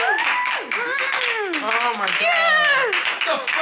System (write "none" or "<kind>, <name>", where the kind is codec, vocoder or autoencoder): none